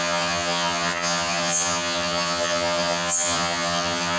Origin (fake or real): fake